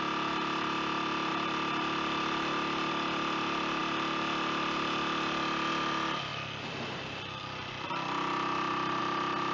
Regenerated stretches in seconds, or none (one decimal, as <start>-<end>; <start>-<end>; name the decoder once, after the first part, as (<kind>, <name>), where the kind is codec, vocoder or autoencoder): none